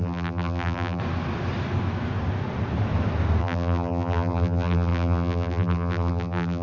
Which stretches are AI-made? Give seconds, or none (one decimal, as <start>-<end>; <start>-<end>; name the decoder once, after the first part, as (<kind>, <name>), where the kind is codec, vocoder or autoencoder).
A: 0.0-1.0 (vocoder, BigVGAN v2); 3.4-6.6